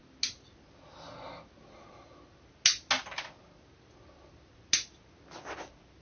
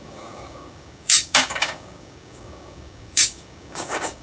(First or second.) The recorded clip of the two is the first